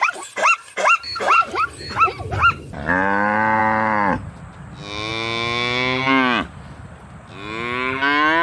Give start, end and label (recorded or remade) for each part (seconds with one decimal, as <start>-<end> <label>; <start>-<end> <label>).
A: 0.0-8.4 recorded